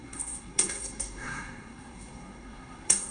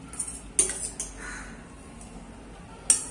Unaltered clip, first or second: second